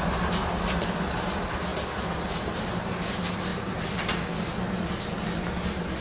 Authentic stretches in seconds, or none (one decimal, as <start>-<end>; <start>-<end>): 0.0-6.0